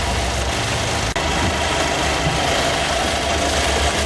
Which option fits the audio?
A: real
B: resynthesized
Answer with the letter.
A